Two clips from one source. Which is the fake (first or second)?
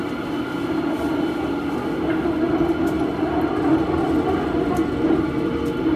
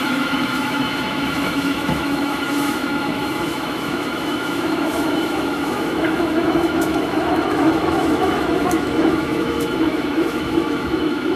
second